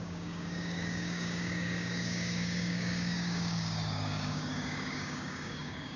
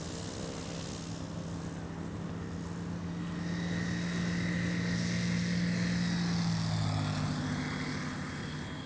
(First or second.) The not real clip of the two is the first